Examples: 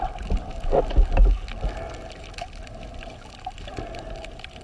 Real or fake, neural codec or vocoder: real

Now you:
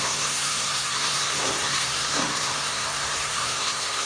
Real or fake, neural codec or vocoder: fake, codec, SNAC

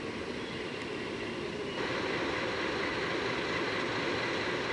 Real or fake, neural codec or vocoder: real